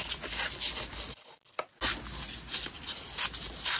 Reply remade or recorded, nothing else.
recorded